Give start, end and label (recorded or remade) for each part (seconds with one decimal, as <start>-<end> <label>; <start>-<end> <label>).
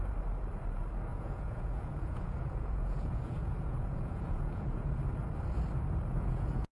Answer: 0.0-1.1 recorded; 1.1-4.9 remade; 4.9-6.1 recorded; 6.1-6.7 remade